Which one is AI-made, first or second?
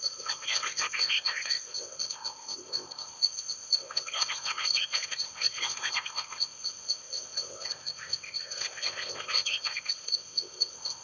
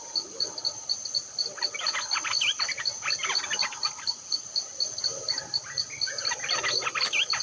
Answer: first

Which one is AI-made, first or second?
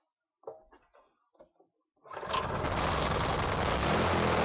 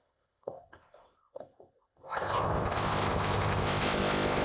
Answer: second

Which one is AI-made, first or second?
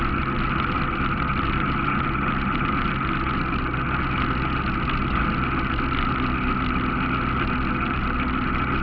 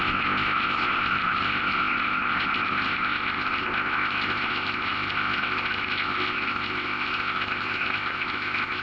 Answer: second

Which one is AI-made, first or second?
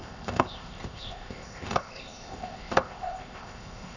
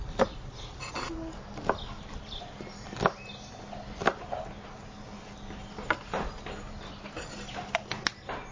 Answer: first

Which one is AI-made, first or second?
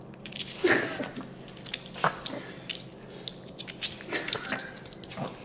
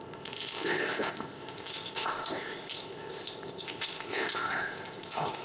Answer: second